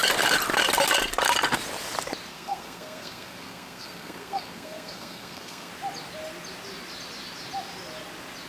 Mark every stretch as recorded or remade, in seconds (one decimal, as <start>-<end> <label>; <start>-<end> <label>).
0.0-2.3 recorded; 2.3-5.7 remade; 5.7-8.5 recorded